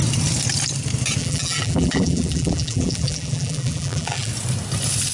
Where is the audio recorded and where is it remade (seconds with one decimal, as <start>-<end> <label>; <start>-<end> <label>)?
0.0-1.2 recorded; 1.2-4.3 remade; 4.3-5.1 recorded